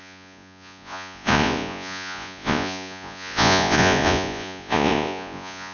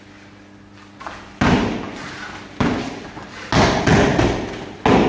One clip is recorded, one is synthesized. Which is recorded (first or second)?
second